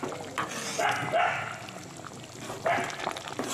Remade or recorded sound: recorded